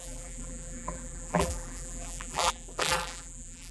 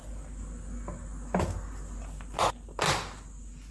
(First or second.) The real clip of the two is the second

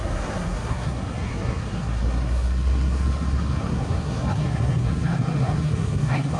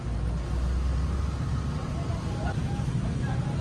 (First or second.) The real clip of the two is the second